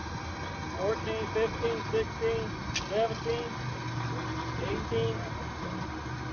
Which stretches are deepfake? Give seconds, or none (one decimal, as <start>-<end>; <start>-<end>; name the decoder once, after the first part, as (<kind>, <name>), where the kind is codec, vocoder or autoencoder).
none